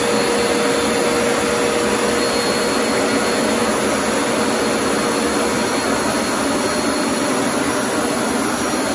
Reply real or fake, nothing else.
real